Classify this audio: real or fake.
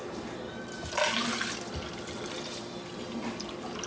real